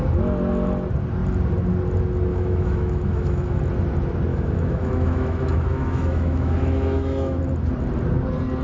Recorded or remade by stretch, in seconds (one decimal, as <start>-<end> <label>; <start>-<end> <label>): 0.0-2.3 recorded; 2.3-3.6 remade; 3.6-4.3 recorded; 4.3-7.4 remade; 7.4-8.6 recorded